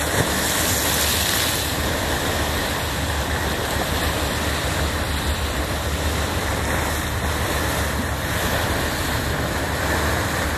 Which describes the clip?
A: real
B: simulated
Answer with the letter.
A